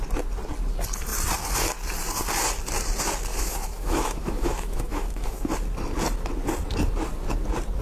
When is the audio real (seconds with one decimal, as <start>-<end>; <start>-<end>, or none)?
0.0-3.3; 5.5-7.8

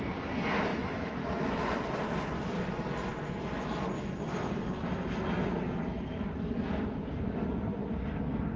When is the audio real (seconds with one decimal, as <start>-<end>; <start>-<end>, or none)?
0.0-0.7; 1.7-8.6

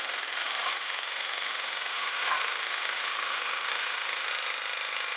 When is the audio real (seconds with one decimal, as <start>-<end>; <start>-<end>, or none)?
4.3-5.2

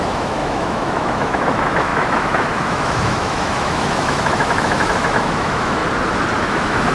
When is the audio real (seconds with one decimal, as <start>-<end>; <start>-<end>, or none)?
5.8-6.4

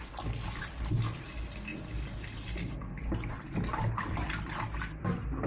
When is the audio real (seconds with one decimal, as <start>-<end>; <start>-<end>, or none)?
0.0-5.5